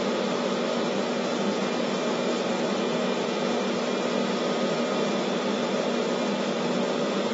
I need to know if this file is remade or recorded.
recorded